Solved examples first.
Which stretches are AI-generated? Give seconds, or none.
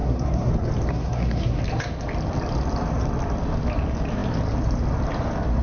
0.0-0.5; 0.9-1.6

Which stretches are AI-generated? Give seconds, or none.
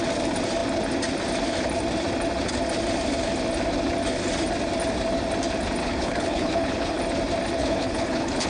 5.8-7.0; 7.6-8.5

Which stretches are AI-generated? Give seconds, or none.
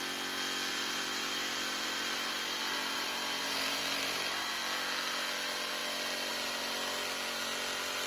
0.7-4.5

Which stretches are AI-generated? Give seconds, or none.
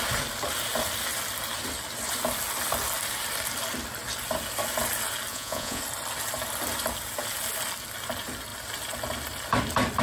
5.3-5.8